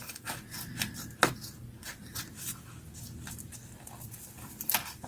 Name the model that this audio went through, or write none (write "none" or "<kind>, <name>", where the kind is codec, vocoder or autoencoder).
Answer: none